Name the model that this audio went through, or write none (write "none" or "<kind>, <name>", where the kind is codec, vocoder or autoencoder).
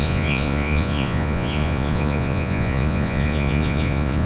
vocoder, Vocos